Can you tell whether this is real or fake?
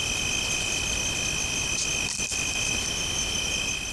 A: real